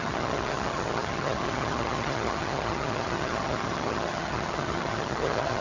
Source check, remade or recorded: remade